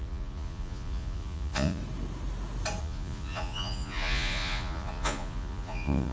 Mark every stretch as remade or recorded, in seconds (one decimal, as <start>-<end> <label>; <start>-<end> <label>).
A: 0.0-1.8 remade; 1.8-2.8 recorded; 2.8-6.1 remade